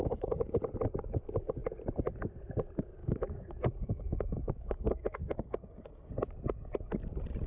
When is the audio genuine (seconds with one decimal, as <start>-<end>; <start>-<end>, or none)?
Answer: 0.6-3.0; 6.1-7.5